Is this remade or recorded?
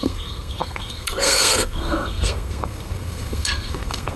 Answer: remade